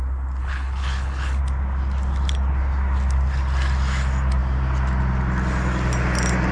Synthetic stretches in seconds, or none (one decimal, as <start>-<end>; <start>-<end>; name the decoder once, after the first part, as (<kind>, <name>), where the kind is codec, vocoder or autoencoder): 0.4-1.4 (codec, HILCodec)